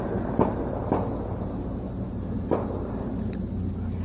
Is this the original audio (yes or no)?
yes